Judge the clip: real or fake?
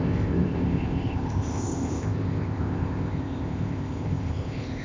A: fake